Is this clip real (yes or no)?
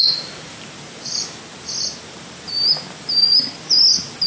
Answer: yes